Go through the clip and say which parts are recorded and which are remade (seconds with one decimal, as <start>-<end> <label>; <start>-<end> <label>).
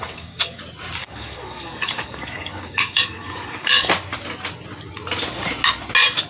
0.0-0.6 remade; 0.6-1.0 recorded; 1.0-3.9 remade; 3.9-6.3 recorded